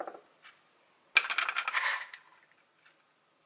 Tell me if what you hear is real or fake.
real